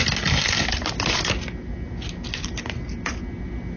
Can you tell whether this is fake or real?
real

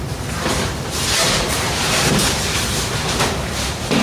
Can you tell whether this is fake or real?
fake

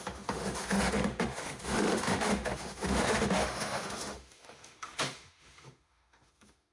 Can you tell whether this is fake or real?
fake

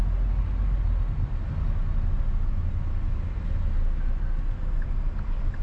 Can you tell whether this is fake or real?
real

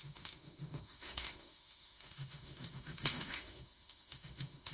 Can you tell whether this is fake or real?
fake